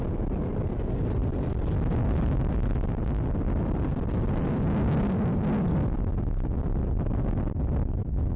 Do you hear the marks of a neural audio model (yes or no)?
no